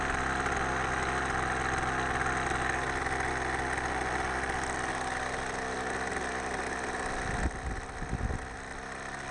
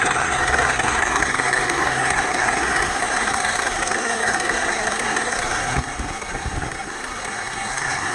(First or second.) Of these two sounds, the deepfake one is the second